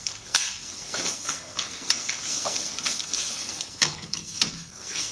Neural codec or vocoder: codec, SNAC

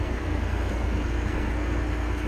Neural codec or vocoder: codec, SNAC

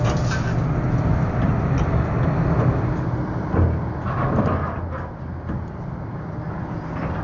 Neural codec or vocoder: none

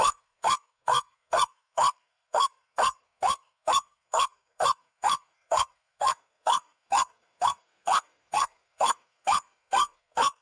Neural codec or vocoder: codec, SNAC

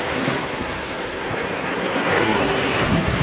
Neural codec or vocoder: codec, SNAC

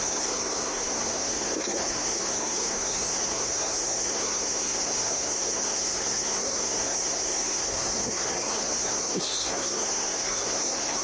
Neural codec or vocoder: codec, SNAC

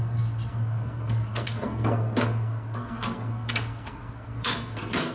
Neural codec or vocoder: codec, SNAC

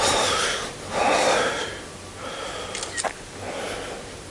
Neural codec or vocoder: none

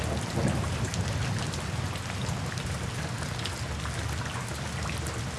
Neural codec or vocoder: none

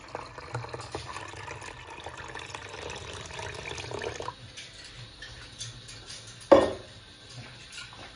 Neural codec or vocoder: none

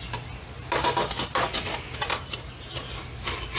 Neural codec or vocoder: none